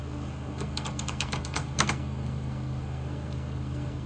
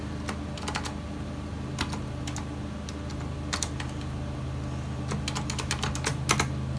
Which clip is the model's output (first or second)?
first